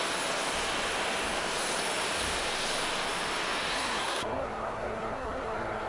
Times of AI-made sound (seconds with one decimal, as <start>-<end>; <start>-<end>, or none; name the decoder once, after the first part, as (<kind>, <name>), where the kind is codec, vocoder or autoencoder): 3.7-5.9 (codec, SNAC)